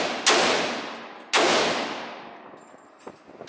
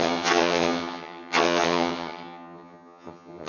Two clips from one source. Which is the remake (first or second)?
second